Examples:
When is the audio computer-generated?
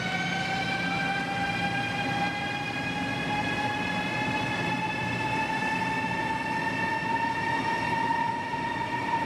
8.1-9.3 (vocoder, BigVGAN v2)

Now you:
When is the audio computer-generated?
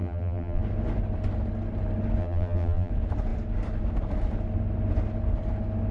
0.0-0.6 (vocoder, BigVGAN v2); 2.2-2.9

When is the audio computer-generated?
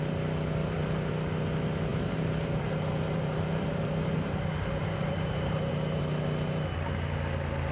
0.6-1.1 (vocoder, BigVGAN v2); 1.9-6.0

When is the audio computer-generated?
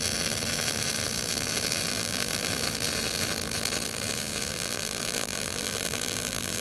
1.9-2.5 (vocoder, BigVGAN v2); 4.5-6.6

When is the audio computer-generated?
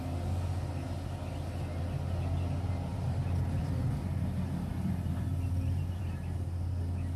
2.9-4.1 (vocoder, BigVGAN v2)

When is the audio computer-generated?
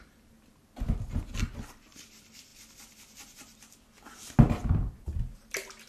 none